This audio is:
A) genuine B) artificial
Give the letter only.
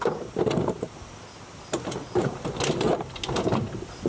A